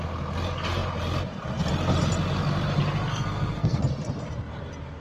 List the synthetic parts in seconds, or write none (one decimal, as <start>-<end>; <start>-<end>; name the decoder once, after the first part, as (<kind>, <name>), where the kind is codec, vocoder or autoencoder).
3.1-3.8 (codec, SNAC)